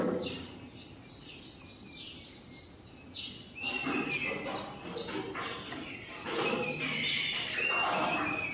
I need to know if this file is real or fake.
real